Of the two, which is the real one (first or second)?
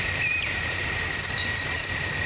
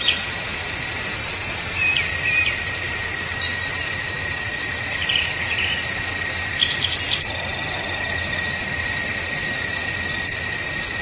second